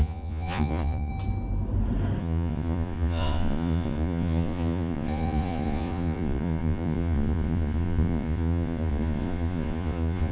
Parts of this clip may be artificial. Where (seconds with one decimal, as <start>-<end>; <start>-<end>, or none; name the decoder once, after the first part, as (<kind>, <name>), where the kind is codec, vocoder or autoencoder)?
0.0-1.1 (vocoder, Vocos); 2.2-10.3